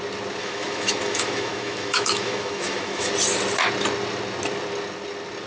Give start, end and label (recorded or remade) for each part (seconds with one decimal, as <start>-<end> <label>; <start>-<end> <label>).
0.0-0.4 recorded; 0.4-3.1 remade; 3.1-5.5 recorded